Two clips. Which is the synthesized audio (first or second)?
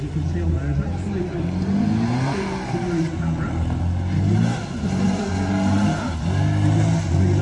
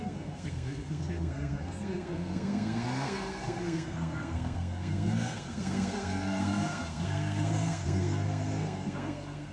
second